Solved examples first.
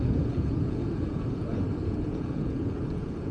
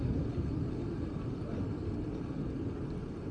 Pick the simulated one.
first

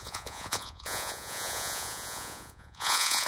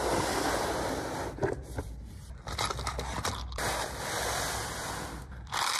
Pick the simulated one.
first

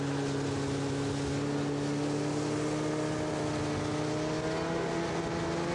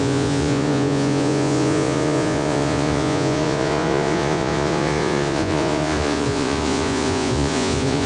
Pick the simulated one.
second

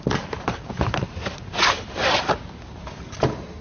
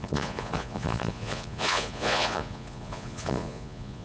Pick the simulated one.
second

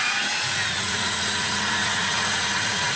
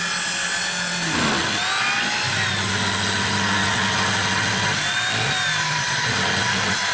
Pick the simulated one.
first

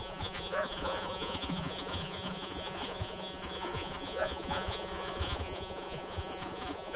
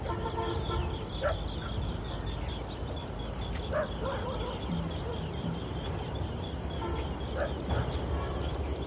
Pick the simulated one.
first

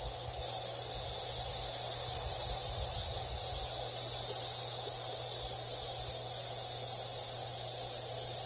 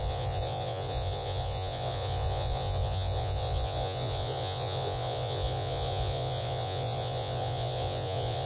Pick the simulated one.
second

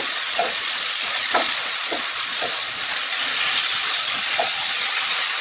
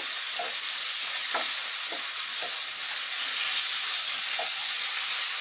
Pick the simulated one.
first